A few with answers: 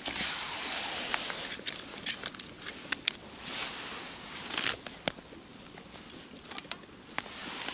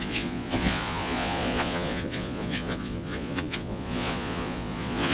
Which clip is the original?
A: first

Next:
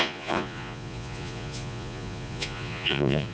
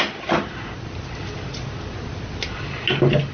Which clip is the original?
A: second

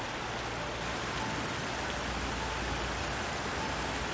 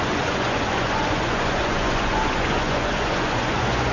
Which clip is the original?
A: first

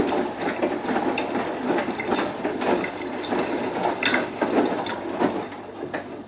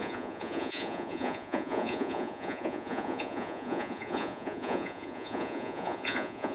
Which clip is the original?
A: first